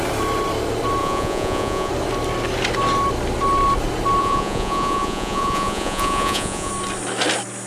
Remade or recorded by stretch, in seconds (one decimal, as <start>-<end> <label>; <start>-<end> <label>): 0.0-1.0 recorded; 1.0-1.9 remade; 1.9-4.2 recorded; 4.2-6.7 remade; 6.7-7.7 recorded